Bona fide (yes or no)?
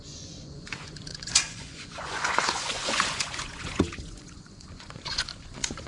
no